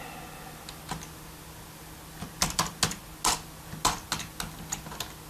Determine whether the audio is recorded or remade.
recorded